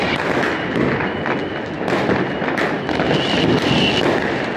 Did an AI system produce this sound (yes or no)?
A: no